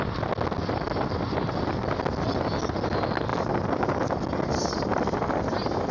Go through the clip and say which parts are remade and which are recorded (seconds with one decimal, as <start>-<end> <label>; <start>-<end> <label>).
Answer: 0.0-5.9 recorded